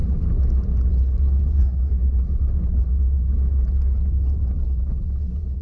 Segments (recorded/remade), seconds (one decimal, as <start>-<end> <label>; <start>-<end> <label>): 0.0-1.5 recorded; 1.5-1.9 remade; 1.9-5.6 recorded